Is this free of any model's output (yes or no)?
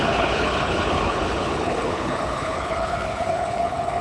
no